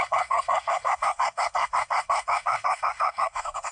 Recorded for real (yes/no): no